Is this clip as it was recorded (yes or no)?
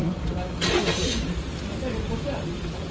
yes